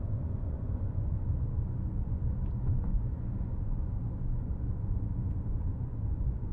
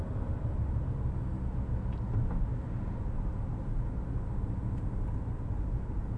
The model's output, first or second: first